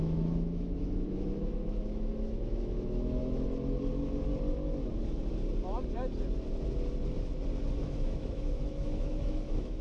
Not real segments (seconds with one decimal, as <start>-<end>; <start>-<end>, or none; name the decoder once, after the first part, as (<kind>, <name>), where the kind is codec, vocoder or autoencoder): 0.0-3.2 (autoencoder, DAC-VAE); 7.8-9.8